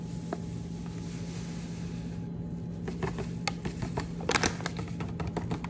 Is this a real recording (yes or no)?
yes